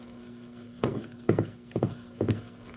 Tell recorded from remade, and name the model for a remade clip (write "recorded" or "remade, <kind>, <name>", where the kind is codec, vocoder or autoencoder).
remade, codec, SNAC